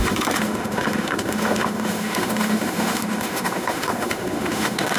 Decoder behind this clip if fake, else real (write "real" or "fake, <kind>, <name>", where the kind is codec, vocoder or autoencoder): fake, autoencoder, DAC-VAE